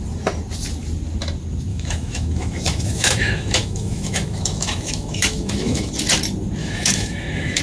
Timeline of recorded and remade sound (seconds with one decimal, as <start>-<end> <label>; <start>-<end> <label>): 0.0-1.7 recorded; 1.7-5.9 remade; 5.9-6.6 recorded; 6.6-7.6 remade

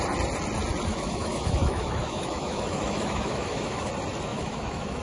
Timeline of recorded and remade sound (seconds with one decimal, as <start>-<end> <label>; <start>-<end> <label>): 0.0-0.9 recorded; 0.9-3.9 remade; 3.9-4.3 recorded; 4.3-5.0 remade